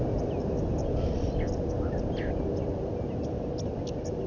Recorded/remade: recorded